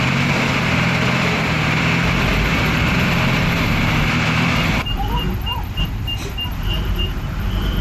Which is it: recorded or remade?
remade